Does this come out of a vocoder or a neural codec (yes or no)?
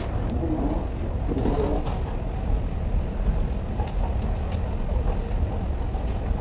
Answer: no